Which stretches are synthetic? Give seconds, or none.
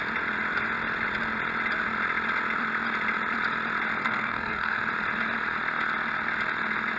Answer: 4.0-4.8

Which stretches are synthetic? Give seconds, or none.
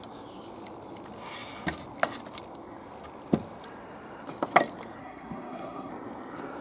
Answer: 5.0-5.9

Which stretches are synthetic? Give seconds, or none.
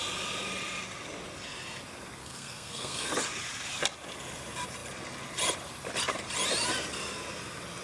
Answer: 2.2-3.1